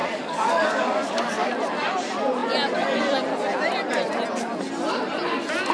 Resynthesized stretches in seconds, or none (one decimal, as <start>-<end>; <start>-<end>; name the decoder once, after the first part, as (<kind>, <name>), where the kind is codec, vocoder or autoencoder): 0.0-1.5 (codec, DAC)